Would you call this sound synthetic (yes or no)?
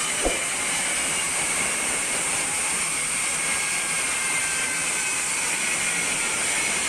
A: no